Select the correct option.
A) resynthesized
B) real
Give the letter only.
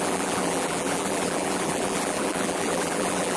A